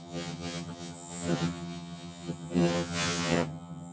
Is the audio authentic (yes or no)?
no